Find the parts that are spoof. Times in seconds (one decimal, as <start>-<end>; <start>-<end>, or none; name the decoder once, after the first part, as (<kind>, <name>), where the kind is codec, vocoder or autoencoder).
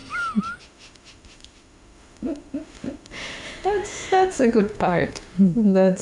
0.6-6.0 (autoencoder, DAC-VAE)